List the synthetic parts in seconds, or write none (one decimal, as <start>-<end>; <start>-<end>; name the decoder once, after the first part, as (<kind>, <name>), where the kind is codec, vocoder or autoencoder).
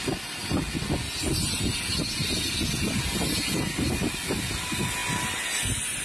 none